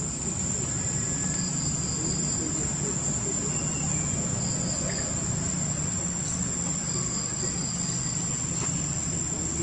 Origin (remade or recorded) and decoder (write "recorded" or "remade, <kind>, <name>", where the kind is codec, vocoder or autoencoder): recorded